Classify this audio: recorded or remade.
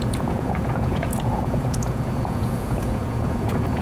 remade